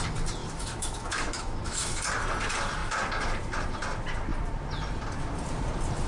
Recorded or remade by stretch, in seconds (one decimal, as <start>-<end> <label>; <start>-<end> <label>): 0.0-0.4 recorded; 0.4-2.0 remade; 2.0-6.1 recorded